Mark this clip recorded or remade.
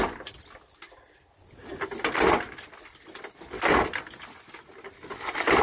recorded